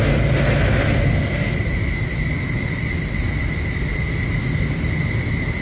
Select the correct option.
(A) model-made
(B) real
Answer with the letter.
B